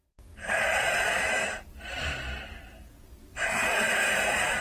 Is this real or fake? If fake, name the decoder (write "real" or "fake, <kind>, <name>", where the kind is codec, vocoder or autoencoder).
real